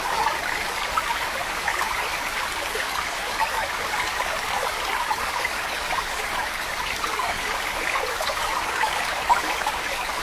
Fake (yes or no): yes